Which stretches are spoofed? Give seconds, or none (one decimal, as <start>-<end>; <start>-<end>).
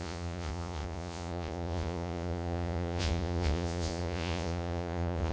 0.0-5.3